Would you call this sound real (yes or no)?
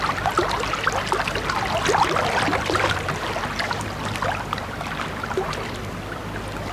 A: yes